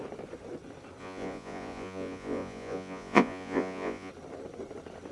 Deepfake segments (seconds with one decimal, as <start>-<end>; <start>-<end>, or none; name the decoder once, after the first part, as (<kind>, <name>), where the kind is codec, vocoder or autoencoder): 1.0-4.1 (vocoder, Vocos)